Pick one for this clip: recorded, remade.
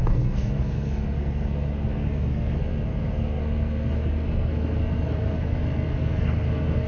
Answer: remade